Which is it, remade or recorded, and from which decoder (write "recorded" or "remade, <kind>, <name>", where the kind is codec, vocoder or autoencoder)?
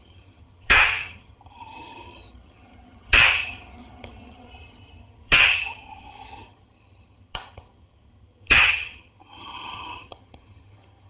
remade, vocoder, HiFi-GAN